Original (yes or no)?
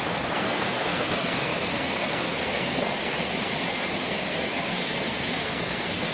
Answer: no